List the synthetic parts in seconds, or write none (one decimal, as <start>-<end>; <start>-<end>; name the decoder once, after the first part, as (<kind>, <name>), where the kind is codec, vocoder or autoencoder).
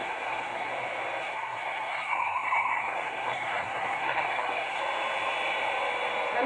0.0-0.7 (codec, SNAC); 1.2-4.8